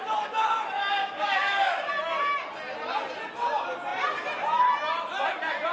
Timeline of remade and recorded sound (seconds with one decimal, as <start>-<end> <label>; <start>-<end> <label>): 0.0-1.0 recorded; 1.0-1.9 remade; 1.9-5.7 recorded